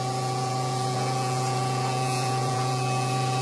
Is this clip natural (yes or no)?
no